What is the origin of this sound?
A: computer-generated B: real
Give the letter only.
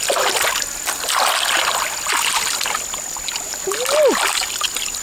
B